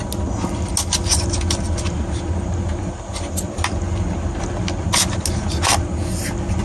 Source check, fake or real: real